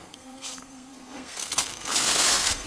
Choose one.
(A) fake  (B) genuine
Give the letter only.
A